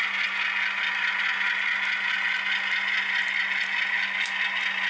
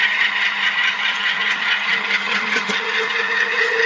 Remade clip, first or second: second